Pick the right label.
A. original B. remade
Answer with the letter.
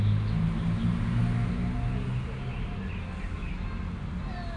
A